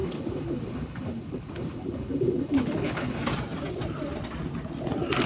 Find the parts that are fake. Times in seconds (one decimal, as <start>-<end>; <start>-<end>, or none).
0.0-3.2